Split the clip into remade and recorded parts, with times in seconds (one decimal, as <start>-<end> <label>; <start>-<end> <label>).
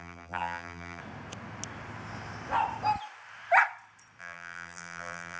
0.0-1.0 remade; 1.0-4.2 recorded; 4.2-5.4 remade